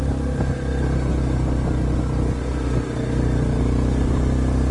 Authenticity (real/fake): real